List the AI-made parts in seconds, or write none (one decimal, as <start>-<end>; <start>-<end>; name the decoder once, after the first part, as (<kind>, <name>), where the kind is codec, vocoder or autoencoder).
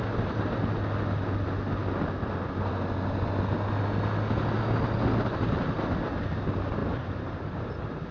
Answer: 6.8-8.1 (vocoder, BigVGAN v2)